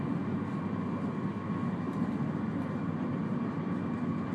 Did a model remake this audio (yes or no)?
no